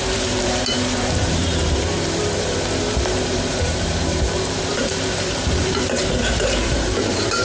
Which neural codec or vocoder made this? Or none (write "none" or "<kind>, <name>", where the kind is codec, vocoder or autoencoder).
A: vocoder, BigVGAN v2